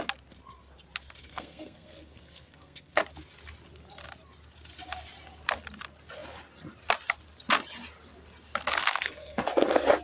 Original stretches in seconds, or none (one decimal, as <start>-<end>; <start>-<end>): 0.0-1.2; 3.0-8.8; 9.4-10.0